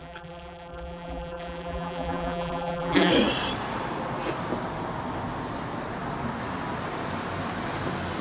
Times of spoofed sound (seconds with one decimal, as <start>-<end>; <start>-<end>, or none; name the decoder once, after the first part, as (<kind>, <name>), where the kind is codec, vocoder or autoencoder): 0.0-3.1 (vocoder, BigVGAN v2)